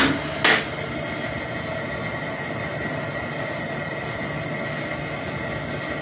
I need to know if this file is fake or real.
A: real